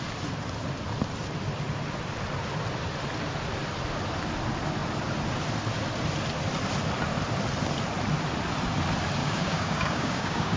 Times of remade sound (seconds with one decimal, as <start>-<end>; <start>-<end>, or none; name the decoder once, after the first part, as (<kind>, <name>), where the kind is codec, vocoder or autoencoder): 9.2-10.6 (codec, DAC)